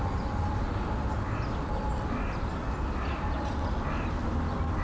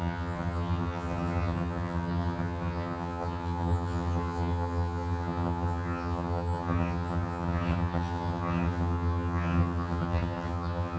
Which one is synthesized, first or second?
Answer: second